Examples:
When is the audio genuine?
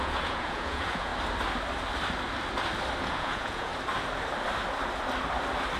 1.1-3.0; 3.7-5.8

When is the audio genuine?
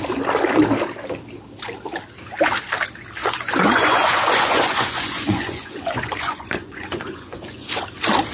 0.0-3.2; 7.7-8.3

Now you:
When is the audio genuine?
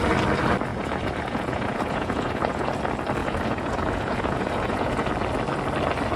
0.0-0.7; 2.8-3.2; 5.1-6.2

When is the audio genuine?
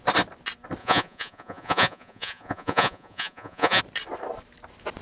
0.0-0.8; 3.8-5.0